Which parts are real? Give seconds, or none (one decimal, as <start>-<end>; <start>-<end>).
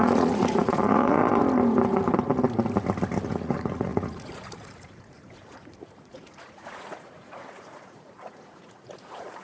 1.2-3.3